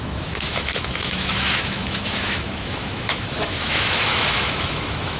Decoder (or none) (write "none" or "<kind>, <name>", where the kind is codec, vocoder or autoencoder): autoencoder, DAC-VAE